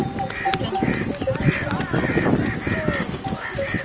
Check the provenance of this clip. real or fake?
real